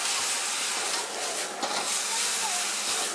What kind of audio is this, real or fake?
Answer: real